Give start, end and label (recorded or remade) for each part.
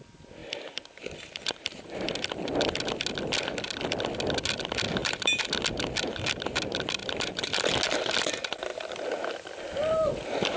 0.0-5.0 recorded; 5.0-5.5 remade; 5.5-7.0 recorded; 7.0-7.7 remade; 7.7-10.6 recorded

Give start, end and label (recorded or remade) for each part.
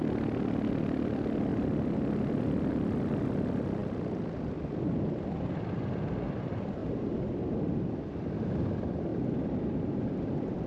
0.0-1.5 remade; 1.5-2.7 recorded; 2.7-6.8 remade; 6.8-8.7 recorded; 8.7-10.7 remade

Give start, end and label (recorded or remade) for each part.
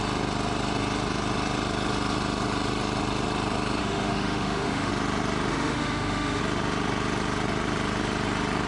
0.0-3.8 recorded; 3.8-4.9 remade; 4.9-5.5 recorded; 5.5-6.4 remade; 6.4-8.7 recorded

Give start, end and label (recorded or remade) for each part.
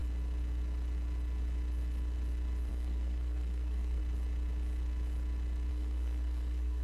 0.0-2.7 recorded; 2.7-4.0 remade; 4.0-5.7 recorded; 5.7-6.8 remade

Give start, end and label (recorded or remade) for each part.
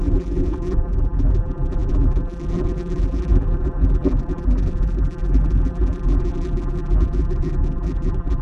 0.0-8.4 remade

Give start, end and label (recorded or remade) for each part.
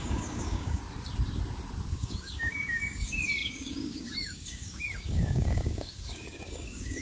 0.0-0.8 remade; 0.8-1.9 recorded; 1.9-7.0 remade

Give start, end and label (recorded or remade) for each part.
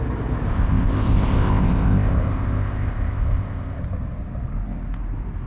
0.0-0.5 recorded; 0.5-3.8 remade; 3.8-5.5 recorded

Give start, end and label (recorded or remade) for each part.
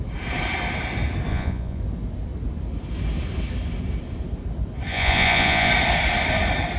0.0-1.3 recorded; 1.3-1.8 remade; 1.8-4.9 recorded; 4.9-5.7 remade; 5.7-6.8 recorded